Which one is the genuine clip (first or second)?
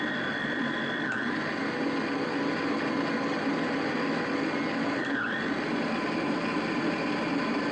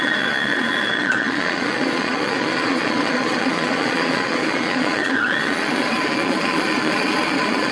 first